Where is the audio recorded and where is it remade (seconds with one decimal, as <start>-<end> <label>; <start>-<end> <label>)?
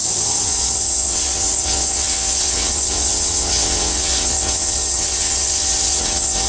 0.0-6.5 remade